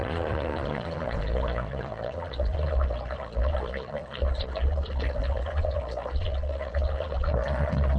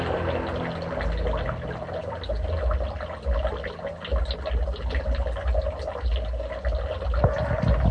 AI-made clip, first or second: first